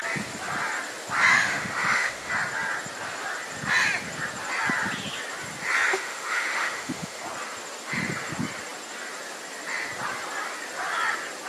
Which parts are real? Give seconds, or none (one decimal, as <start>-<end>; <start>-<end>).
0.0-1.3; 2.3-5.9; 7.2-11.5